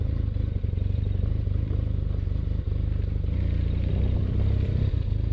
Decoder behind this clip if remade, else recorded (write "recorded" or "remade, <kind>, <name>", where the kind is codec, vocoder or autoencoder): remade, vocoder, BigVGAN v2